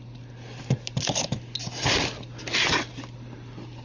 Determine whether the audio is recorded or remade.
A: recorded